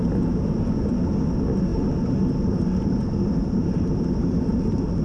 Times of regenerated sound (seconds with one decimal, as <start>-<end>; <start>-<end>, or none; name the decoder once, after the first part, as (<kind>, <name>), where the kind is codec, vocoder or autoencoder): 1.7-5.0 (vocoder, BigVGAN v2)